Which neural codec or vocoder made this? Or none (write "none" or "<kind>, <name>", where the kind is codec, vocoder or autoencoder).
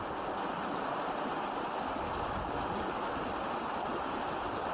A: none